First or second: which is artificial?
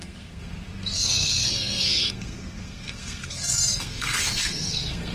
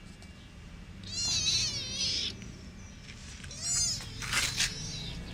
first